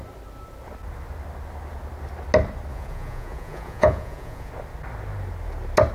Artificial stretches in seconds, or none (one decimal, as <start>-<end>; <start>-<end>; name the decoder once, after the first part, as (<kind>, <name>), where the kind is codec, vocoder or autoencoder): 2.7-4.5 (vocoder, Vocos)